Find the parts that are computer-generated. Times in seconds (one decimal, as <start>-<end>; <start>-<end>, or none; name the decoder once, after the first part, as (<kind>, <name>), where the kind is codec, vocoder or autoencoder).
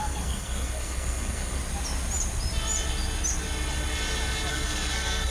0.0-1.6 (codec, SNAC); 4.5-5.3